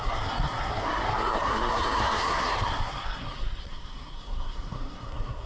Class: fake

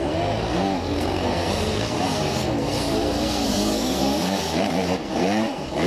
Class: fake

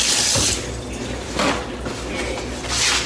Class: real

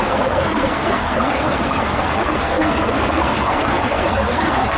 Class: fake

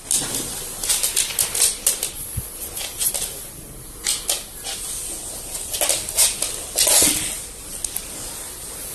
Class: real